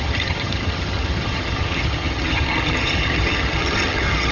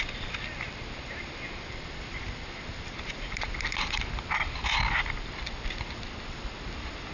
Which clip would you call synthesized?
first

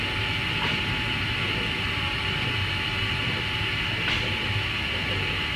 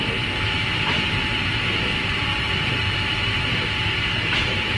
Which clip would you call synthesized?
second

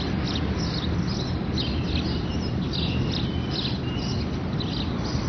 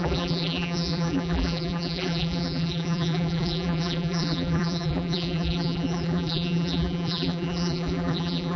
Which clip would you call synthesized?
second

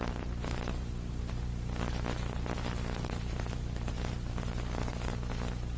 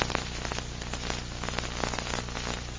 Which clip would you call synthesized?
first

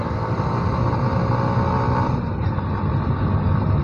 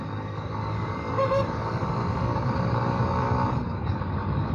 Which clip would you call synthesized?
second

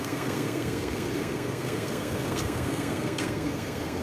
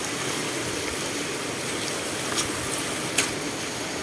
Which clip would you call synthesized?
first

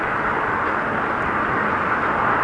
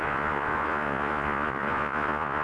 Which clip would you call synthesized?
second